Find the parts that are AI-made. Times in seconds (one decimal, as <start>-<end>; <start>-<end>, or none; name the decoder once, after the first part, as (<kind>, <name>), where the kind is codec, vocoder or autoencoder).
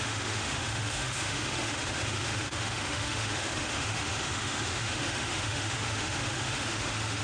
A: 0.0-7.2 (autoencoder, DAC-VAE)